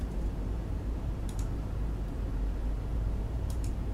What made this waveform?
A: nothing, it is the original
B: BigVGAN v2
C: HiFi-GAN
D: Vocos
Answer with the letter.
B